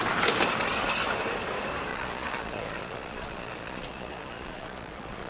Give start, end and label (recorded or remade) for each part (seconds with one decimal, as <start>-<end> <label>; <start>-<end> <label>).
0.0-1.9 recorded; 1.9-5.3 remade